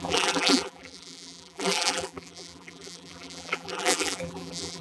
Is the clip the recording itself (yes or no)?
no